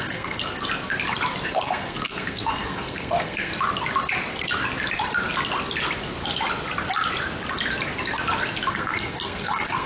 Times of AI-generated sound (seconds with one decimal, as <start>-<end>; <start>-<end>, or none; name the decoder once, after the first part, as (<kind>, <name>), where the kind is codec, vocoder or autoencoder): 0.0-0.4 (codec, SNAC); 1.5-3.5; 8.7-9.9